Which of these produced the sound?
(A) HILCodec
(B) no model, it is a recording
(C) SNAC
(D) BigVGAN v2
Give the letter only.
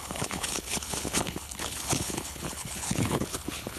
A